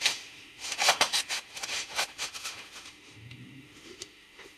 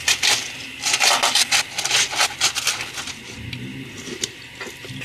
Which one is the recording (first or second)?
second